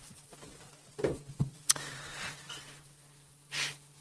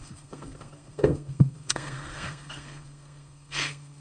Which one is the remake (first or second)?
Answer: second